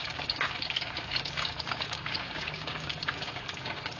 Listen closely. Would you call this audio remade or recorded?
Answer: remade